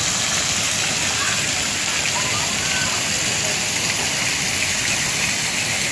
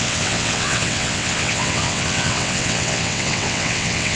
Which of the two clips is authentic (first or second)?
first